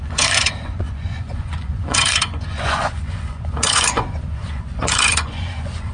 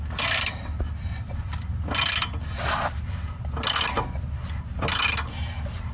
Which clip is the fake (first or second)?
first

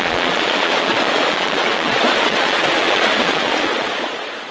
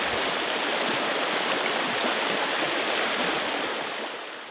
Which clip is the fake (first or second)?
first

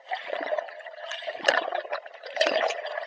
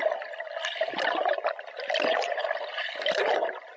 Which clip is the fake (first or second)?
first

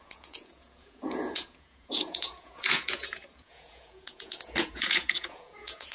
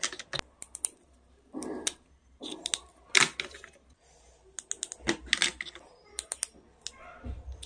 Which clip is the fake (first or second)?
first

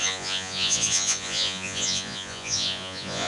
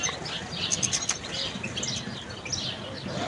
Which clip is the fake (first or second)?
first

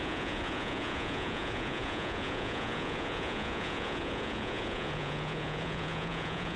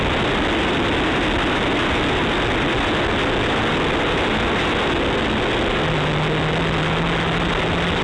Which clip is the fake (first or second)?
first